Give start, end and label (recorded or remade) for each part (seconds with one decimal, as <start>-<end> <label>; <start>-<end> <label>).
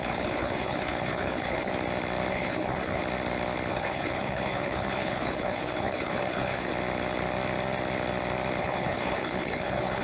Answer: 0.0-1.7 remade; 1.7-2.3 recorded; 2.3-3.0 remade; 3.0-3.7 recorded; 3.7-6.7 remade; 6.7-8.6 recorded; 8.6-10.0 remade